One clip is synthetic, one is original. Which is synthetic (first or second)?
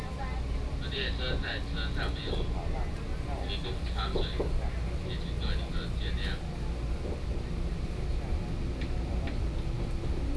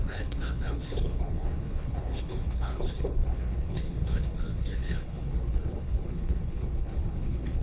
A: second